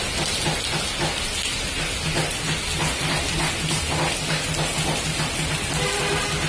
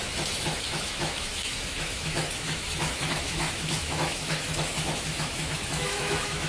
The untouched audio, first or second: first